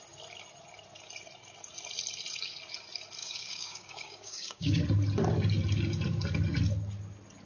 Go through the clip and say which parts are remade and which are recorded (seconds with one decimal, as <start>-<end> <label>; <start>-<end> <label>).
0.0-3.2 recorded; 3.2-4.8 remade; 4.8-7.5 recorded